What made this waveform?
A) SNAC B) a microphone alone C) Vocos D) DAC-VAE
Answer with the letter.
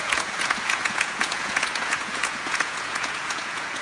C